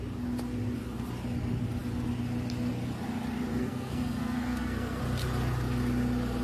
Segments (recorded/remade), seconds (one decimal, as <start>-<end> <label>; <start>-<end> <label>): 0.0-3.5 recorded; 3.5-5.0 remade; 5.0-6.4 recorded